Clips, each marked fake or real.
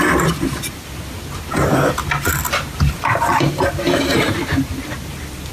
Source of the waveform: real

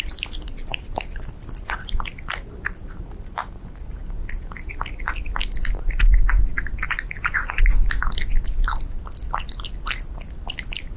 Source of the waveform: real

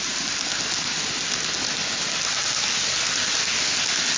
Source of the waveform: real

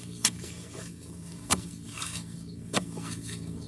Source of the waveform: fake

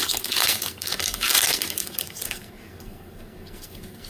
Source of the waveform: fake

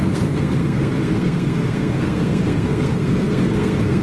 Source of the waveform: fake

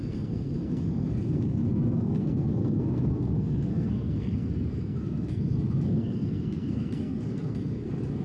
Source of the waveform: fake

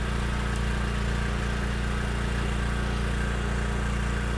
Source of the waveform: real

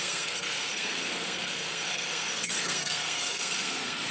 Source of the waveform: fake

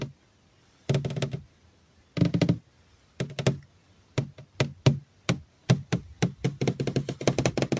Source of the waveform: real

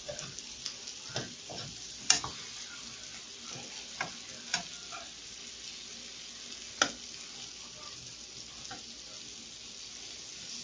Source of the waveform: real